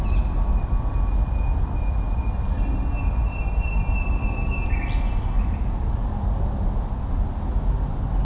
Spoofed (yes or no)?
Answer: no